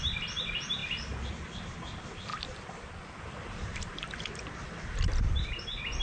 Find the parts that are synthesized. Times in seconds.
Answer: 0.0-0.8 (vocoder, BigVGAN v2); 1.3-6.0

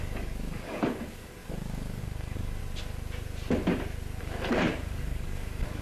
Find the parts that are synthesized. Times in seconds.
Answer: 0.0-2.6 (codec, DAC); 4.2-5.8

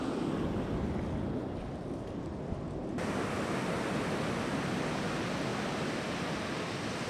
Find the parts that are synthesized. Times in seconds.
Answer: none

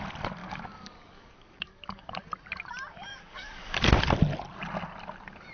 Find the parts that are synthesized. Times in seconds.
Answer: 0.4-2.2 (codec, DAC); 3.1-3.9

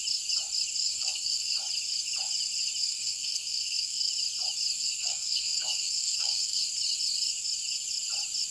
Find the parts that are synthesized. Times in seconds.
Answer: 0.8-1.5 (codec, SNAC); 2.9-4.1; 4.7-6.6